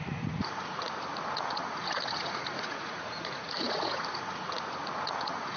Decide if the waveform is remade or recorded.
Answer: remade